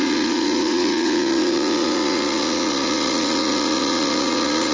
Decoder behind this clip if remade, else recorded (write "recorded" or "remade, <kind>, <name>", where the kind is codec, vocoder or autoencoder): remade, vocoder, Vocos